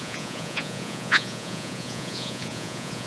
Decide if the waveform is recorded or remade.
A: remade